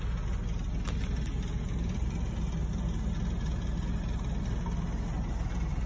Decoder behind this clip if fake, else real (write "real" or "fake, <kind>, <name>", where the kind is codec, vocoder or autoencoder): real